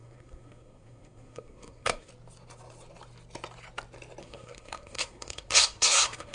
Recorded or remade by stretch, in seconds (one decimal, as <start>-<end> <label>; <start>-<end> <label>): 0.0-2.1 remade; 2.1-4.2 recorded; 4.2-6.3 remade